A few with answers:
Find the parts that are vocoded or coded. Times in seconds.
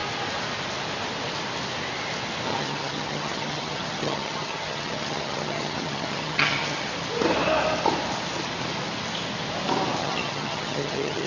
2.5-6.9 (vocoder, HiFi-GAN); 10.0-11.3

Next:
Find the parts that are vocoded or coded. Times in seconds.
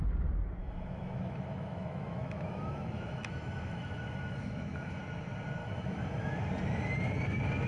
0.6-5.0 (autoencoder, DAC-VAE); 5.6-6.3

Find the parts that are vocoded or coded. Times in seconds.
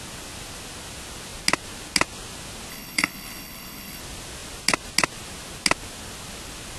2.7-4.0 (codec, HILCodec)